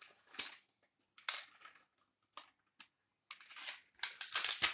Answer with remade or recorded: recorded